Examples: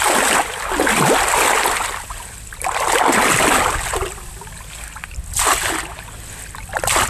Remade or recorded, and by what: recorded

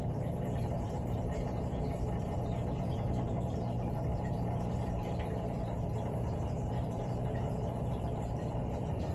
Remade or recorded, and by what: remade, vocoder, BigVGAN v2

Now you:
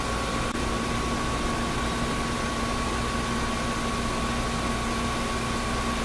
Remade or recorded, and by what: recorded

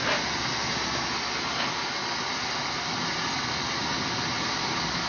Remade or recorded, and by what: recorded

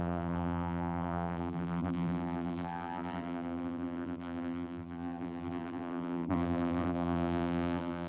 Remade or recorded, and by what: remade, vocoder, BigVGAN v2